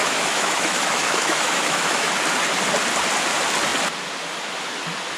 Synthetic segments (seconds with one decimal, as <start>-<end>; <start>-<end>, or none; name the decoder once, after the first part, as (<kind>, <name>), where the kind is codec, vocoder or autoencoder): 0.0-2.1 (autoencoder, DAC-VAE)

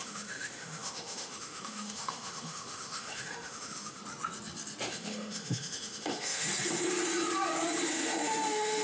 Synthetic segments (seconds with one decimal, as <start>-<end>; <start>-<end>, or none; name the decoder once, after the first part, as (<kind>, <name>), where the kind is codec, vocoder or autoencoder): 0.0-4.0 (autoencoder, DAC-VAE); 4.9-6.5; 7.9-8.8